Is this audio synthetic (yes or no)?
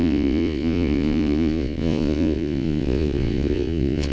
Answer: yes